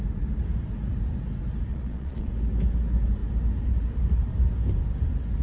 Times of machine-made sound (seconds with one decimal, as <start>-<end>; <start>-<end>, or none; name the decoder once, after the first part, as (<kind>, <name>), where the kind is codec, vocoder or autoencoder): 1.7-2.3 (vocoder, Vocos)